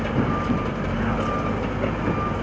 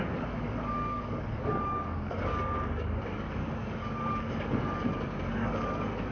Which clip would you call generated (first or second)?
second